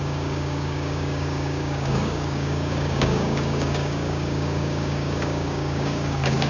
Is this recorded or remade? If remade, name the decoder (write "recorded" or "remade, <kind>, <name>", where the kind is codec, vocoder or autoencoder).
remade, codec, DAC